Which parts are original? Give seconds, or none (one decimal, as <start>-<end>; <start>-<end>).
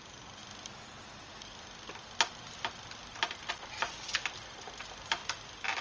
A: 0.0-5.8